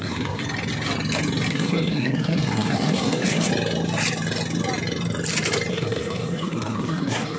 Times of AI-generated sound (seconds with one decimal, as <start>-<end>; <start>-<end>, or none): 0.0-0.4; 1.5-3.5; 5.7-7.4